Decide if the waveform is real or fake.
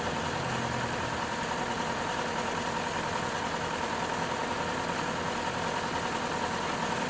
real